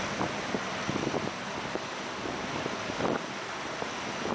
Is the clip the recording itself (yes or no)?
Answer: yes